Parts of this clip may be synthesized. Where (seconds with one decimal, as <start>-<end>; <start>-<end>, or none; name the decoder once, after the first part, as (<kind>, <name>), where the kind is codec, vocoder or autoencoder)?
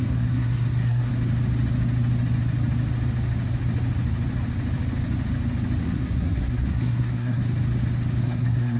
0.0-1.1 (codec, SNAC); 5.8-7.4; 8.2-8.8